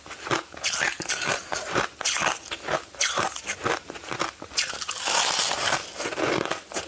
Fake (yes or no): no